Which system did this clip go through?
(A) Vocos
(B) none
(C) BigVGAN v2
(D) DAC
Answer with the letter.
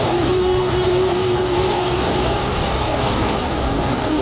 D